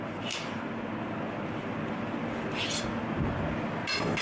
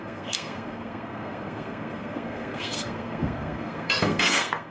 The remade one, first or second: second